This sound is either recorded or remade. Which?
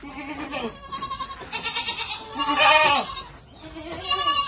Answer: recorded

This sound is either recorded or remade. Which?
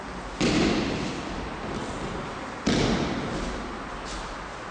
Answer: recorded